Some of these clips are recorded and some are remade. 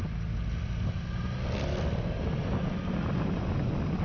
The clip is recorded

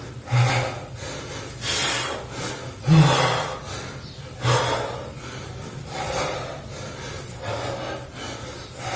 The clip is recorded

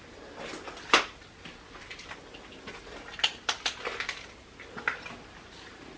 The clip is recorded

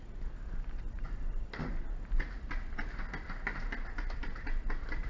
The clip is recorded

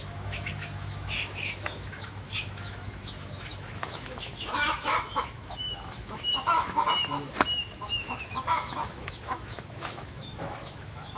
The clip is remade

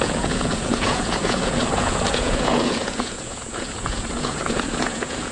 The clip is remade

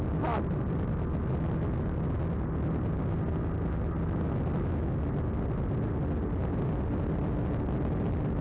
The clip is recorded